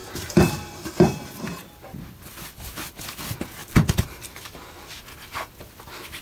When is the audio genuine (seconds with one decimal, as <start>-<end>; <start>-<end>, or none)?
1.2-3.6; 5.0-6.2